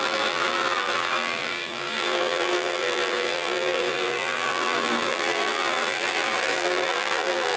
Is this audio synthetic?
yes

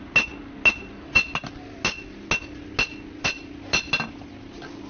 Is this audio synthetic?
no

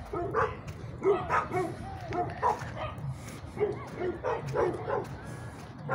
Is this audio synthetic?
no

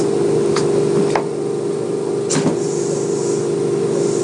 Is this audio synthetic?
no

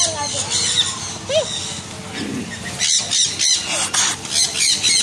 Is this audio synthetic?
no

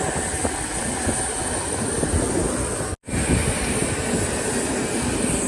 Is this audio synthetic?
no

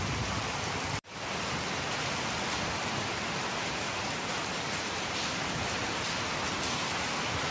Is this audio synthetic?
yes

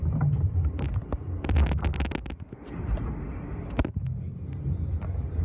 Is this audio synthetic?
no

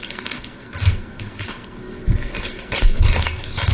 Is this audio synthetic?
yes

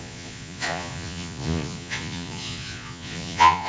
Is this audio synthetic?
yes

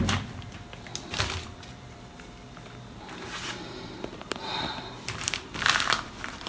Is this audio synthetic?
yes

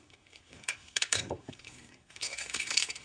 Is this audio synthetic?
yes